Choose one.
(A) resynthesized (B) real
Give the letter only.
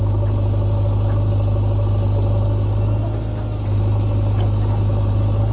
B